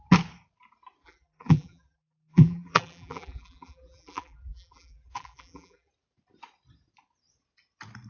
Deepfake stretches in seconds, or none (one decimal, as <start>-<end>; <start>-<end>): 1.0-5.9